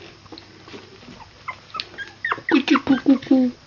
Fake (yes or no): no